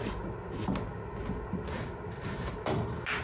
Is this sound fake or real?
real